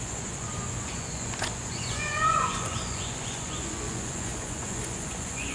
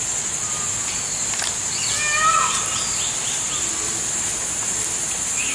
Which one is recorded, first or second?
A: second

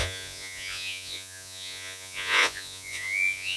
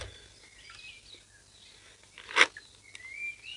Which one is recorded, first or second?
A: second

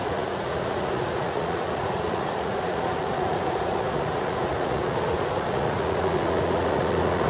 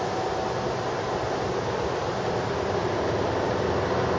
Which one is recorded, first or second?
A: second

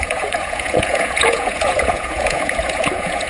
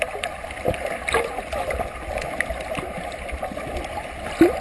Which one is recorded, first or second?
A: second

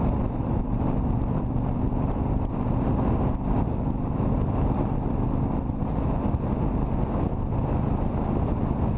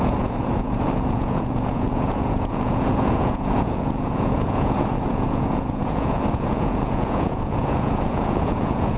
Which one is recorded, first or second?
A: first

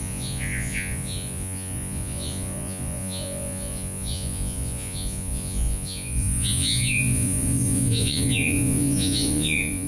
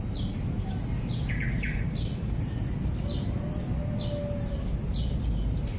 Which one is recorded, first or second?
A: second